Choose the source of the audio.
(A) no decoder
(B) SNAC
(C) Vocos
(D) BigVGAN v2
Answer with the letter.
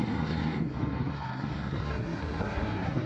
B